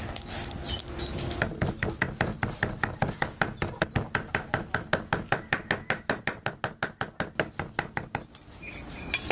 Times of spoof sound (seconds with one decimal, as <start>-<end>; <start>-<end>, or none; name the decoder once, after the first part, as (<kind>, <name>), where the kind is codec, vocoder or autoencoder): none